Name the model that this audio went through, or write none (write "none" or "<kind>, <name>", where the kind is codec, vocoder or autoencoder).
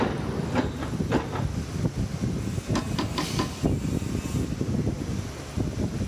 none